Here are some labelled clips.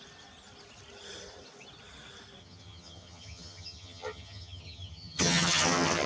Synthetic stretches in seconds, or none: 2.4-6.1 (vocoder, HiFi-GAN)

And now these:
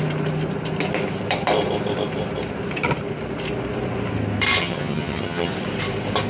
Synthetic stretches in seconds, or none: 4.6-5.5 (vocoder, HiFi-GAN)

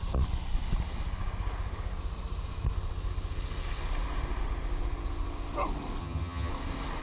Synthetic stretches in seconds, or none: 6.0-6.5 (vocoder, HiFi-GAN)

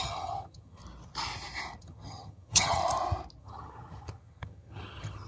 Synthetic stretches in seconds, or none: 0.0-0.8 (vocoder, HiFi-GAN); 1.8-2.8; 3.4-5.3

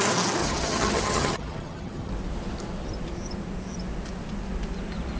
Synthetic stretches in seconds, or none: 0.4-2.1 (vocoder, HiFi-GAN)